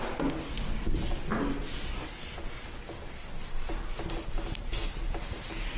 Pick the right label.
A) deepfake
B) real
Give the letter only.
B